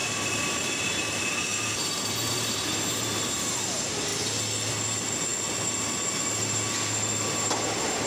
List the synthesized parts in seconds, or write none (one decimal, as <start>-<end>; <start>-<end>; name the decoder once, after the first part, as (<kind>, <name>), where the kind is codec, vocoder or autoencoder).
0.0-3.6 (vocoder, BigVGAN v2)